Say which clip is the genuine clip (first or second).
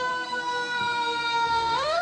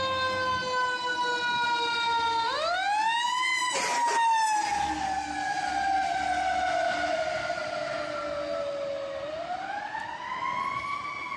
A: second